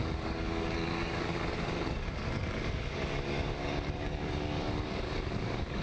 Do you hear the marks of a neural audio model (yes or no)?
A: yes